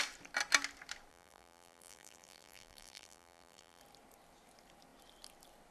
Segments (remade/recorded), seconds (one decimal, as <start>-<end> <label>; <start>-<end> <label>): 0.0-1.1 recorded; 1.1-3.8 remade; 3.8-5.7 recorded